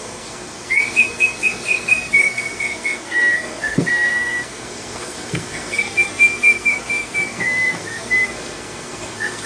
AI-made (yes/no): yes